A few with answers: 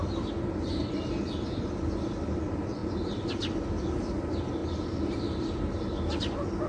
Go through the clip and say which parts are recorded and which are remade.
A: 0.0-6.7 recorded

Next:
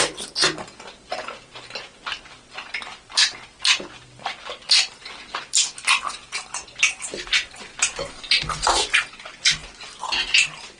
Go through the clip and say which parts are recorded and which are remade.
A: 0.0-10.8 recorded

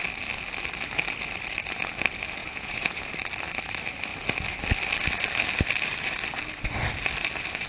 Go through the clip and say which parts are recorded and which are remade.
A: 0.0-2.4 recorded; 2.4-3.1 remade; 3.1-7.7 recorded

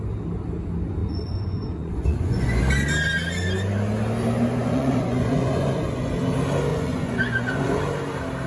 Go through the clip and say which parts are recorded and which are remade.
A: 0.0-1.0 recorded; 1.0-2.6 remade; 2.6-4.6 recorded; 4.6-6.1 remade; 6.1-6.7 recorded; 6.7-7.8 remade; 7.8-8.5 recorded